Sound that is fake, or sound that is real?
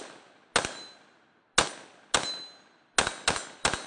real